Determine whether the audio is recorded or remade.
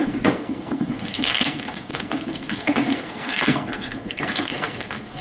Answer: remade